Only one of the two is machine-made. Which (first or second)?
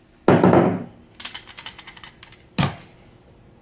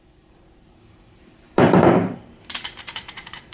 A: second